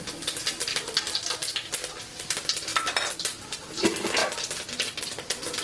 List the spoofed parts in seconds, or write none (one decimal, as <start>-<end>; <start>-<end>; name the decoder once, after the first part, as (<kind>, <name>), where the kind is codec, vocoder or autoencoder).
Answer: none

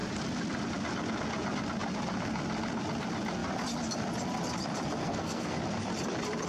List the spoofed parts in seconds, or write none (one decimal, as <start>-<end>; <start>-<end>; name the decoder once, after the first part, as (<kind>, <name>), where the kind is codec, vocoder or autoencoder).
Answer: 5.0-5.6 (codec, SNAC)

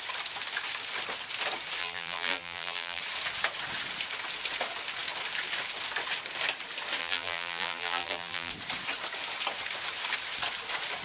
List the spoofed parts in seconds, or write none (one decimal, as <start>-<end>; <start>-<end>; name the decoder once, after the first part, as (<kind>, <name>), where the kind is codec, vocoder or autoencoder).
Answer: 1.8-3.0 (vocoder, BigVGAN v2); 7.0-8.5